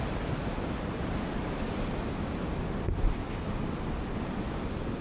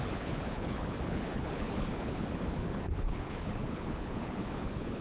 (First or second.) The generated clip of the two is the second